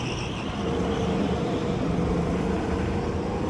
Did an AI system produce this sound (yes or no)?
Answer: no